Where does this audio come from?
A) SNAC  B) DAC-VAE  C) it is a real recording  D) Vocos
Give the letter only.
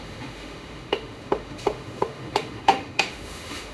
B